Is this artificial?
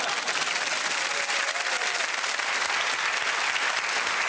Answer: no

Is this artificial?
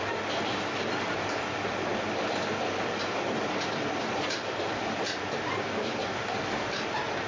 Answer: no